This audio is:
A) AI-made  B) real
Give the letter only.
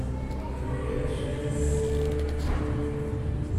B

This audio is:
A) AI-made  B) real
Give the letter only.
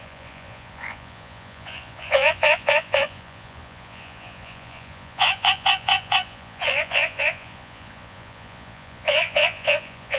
A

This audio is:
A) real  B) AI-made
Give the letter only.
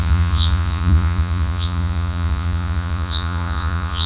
B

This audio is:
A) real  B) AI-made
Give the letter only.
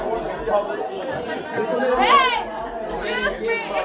A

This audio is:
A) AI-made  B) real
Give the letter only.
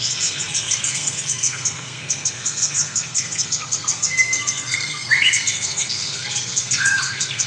A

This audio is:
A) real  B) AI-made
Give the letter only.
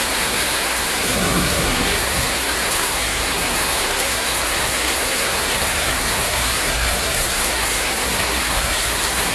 B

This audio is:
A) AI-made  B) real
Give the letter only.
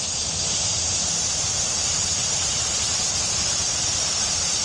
A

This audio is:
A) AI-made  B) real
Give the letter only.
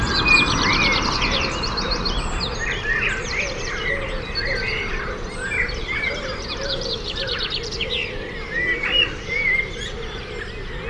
B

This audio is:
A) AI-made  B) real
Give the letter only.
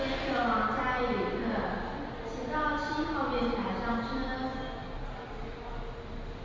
B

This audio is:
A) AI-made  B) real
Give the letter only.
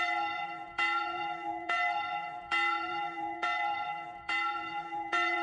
A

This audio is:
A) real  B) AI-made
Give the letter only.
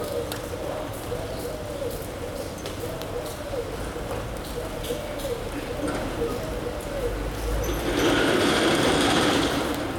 A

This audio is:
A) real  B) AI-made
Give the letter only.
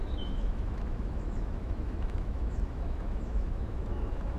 B